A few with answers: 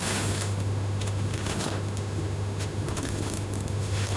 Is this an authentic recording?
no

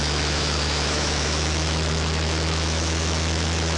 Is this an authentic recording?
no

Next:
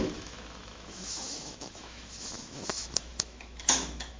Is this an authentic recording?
no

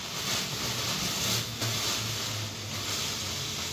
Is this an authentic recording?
yes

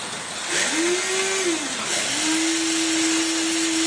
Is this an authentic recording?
yes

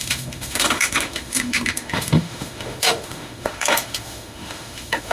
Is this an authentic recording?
no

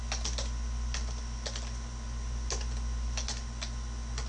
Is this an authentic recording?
yes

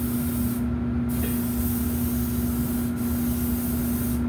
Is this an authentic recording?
yes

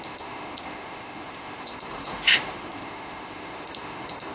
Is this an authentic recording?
no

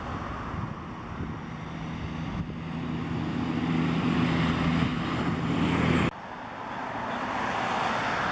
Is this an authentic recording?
yes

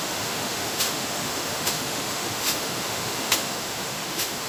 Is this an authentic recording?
no